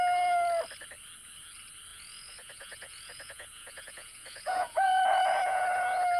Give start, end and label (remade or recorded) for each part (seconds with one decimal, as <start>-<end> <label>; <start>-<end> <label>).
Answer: 0.0-1.9 recorded; 1.9-5.6 remade; 5.6-6.2 recorded

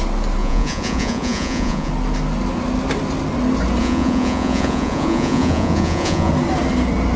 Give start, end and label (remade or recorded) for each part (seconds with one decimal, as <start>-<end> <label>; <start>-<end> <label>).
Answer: 0.0-0.4 recorded; 0.4-1.9 remade; 1.9-3.8 recorded; 3.8-6.3 remade; 6.3-7.2 recorded